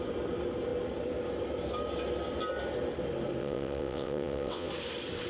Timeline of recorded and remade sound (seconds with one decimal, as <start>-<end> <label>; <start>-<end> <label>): 0.0-3.4 recorded; 3.4-4.7 remade; 4.7-5.3 recorded

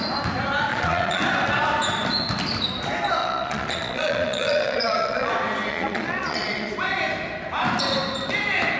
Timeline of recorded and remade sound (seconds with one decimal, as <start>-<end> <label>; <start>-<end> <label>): 0.0-0.7 recorded; 0.7-1.2 remade; 1.2-3.2 recorded; 3.2-5.3 remade; 5.3-5.7 recorded; 5.7-6.7 remade; 6.7-8.8 recorded

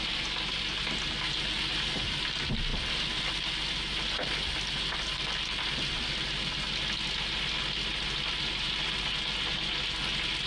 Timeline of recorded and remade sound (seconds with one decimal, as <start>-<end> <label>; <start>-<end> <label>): 0.0-10.5 recorded